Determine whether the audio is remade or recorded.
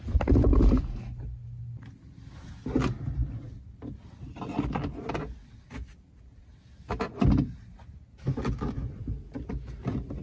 recorded